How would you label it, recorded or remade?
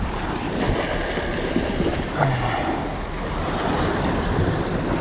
recorded